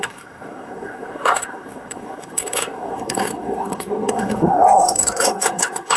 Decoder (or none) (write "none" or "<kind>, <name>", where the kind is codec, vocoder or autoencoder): codec, SNAC